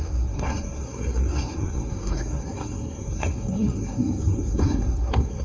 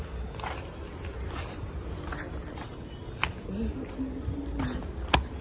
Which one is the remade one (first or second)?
first